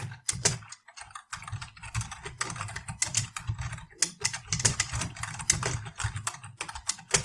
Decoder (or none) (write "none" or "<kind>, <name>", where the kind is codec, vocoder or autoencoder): none